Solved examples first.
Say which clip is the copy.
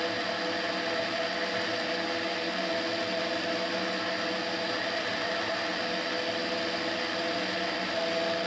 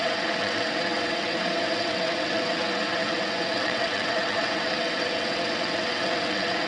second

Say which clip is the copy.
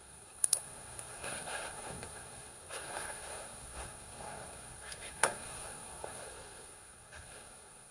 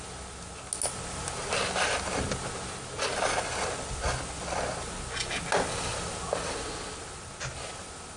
first